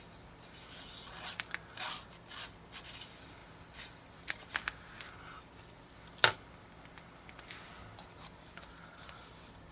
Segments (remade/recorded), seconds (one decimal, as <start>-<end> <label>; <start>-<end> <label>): 0.0-3.4 recorded; 3.4-4.2 remade; 4.2-9.7 recorded